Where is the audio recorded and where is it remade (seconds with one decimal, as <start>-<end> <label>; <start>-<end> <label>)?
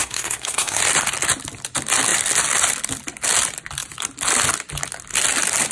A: 0.0-0.8 remade; 0.8-5.7 recorded